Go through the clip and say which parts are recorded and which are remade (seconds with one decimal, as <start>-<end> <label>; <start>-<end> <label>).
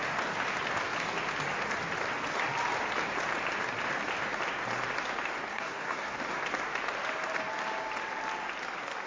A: 0.0-5.5 recorded; 5.5-6.2 remade; 6.2-9.1 recorded